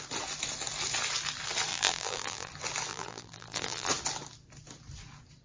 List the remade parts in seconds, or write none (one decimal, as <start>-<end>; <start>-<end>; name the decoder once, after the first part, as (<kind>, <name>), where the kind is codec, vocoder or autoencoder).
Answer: 1.7-2.5 (vocoder, BigVGAN v2); 2.9-3.9